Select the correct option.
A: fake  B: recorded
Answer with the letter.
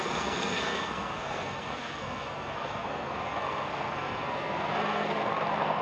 A